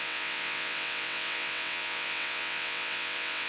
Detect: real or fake fake